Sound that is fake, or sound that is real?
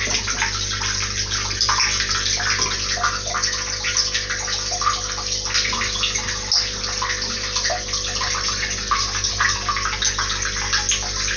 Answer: real